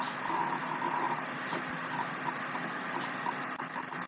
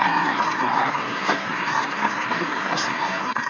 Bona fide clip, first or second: first